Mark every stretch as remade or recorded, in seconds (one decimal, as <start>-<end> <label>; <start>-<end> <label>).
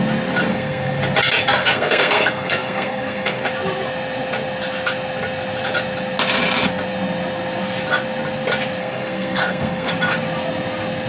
0.0-0.5 recorded; 0.5-1.0 remade; 1.0-1.6 recorded; 1.6-3.5 remade; 3.5-8.8 recorded; 8.8-9.9 remade; 9.9-11.1 recorded